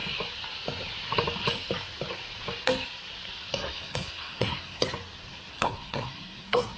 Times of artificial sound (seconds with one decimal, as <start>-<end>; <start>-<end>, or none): 3.5-4.8; 5.5-6.8